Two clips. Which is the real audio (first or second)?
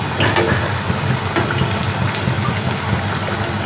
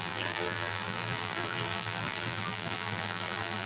first